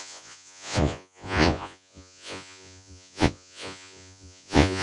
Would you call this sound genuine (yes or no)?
no